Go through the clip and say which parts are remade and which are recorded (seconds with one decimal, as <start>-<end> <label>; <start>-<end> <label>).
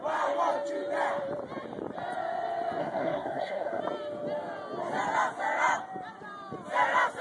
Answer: 0.0-2.8 recorded; 2.8-3.8 remade; 3.8-7.2 recorded